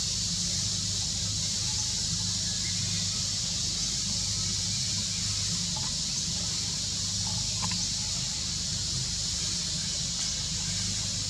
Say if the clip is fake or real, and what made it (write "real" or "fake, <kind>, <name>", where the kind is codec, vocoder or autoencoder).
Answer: real